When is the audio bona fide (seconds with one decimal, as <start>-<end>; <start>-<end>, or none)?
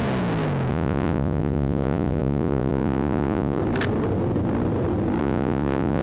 0.0-0.7; 3.6-5.2